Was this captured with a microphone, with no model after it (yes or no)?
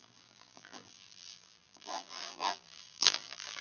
no